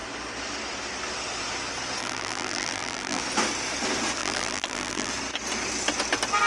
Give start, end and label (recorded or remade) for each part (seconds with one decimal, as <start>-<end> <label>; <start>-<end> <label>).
0.0-2.0 recorded; 2.0-3.2 remade; 3.2-4.2 recorded; 4.2-5.1 remade; 5.1-6.5 recorded